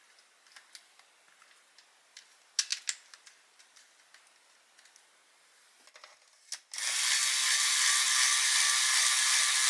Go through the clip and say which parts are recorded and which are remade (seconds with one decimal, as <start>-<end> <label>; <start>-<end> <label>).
0.0-9.7 recorded